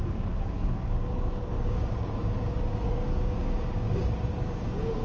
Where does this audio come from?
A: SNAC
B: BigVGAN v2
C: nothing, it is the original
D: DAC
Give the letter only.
D